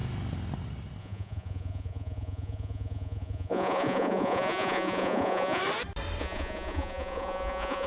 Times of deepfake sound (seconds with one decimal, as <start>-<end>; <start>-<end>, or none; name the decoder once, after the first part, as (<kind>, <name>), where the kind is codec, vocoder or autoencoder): 1.0-5.6 (vocoder, Vocos); 6.2-7.9